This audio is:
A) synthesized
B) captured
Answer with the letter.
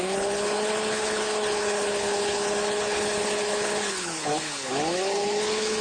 A